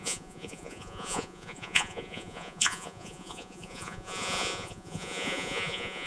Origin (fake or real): fake